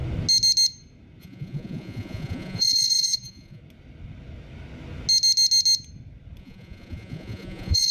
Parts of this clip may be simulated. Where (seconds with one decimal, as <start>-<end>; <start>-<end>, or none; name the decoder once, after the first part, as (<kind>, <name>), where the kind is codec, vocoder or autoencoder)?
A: 1.2-3.6 (vocoder, Vocos); 6.4-7.9